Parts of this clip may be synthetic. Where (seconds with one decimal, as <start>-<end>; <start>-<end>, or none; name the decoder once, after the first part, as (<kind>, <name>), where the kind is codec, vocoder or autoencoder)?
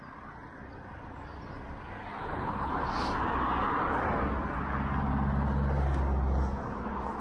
2.2-2.7 (codec, HILCodec)